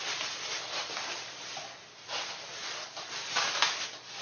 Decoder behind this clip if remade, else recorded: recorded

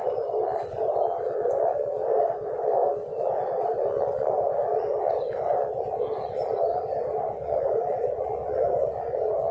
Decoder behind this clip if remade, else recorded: recorded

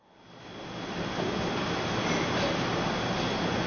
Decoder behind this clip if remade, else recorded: recorded